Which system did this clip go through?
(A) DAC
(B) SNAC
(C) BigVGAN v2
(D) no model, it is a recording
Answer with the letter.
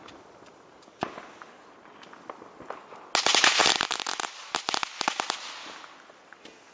D